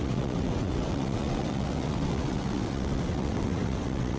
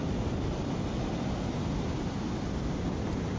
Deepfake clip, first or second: first